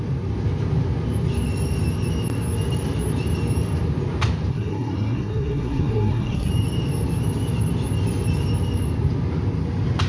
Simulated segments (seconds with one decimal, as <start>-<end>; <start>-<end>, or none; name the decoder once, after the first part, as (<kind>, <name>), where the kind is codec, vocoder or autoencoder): 4.5-6.5 (codec, SNAC)